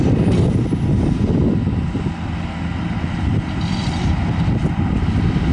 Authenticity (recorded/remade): recorded